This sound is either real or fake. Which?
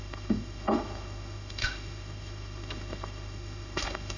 fake